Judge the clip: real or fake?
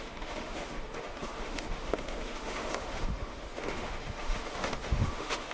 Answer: fake